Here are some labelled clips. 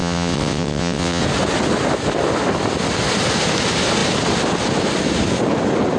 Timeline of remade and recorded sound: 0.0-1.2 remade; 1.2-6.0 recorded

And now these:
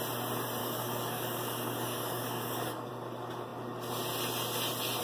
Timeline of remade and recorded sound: 0.0-0.6 recorded; 0.6-2.9 remade; 2.9-5.0 recorded

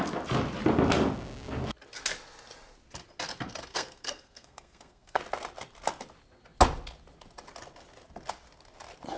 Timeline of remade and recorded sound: 0.0-3.7 recorded; 3.7-5.2 remade; 5.2-9.2 recorded

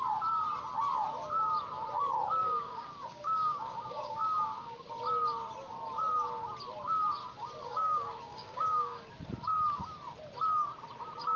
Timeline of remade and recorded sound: 0.0-2.4 recorded; 2.4-4.9 remade; 4.9-7.2 recorded; 7.2-9.1 remade; 9.1-11.4 recorded

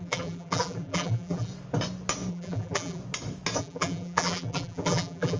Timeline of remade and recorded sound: 0.0-1.5 remade; 1.5-2.3 recorded; 2.3-3.0 remade; 3.0-3.6 recorded; 3.6-5.4 remade

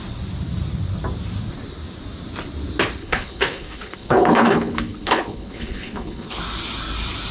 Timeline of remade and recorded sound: 0.0-3.0 recorded; 3.0-6.4 remade; 6.4-7.3 recorded